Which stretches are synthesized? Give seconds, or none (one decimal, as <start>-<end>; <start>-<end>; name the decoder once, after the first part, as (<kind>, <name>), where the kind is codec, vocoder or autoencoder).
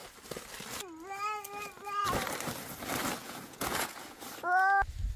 3.2-4.2 (vocoder, Vocos)